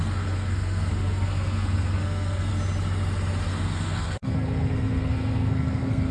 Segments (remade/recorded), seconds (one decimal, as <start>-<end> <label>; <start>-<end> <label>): 0.0-2.5 remade; 2.5-3.5 recorded; 3.5-6.1 remade